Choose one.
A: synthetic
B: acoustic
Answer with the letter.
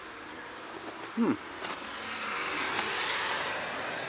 B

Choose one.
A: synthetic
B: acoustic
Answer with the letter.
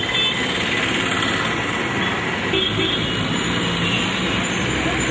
B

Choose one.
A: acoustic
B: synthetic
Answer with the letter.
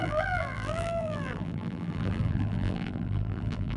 B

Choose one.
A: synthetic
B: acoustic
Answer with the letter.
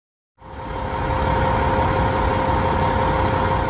B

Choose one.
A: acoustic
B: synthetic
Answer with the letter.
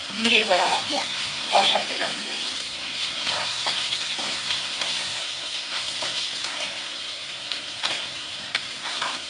B